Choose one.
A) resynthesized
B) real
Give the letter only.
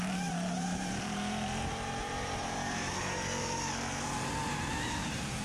A